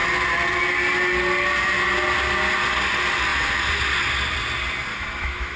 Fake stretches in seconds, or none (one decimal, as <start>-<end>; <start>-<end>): 4.9-5.6

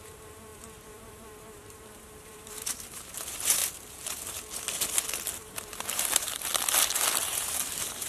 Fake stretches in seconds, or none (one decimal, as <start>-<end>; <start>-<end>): 0.0-3.6; 5.3-6.5; 7.2-8.1

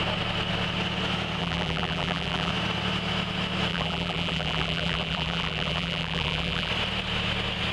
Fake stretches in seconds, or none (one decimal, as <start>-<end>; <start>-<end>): 1.4-2.5; 3.7-6.7

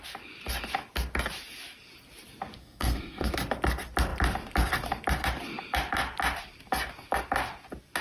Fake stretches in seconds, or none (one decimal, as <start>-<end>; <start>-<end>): 2.6-3.3

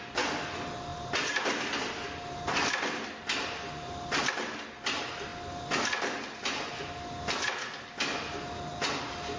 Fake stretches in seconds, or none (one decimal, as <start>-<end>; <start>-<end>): none

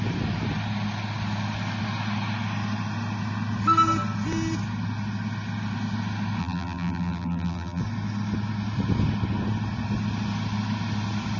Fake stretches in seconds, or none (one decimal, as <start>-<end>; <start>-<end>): 6.4-7.8